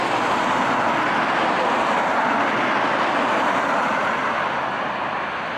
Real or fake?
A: real